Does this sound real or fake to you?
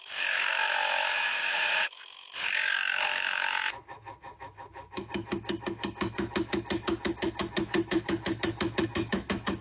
fake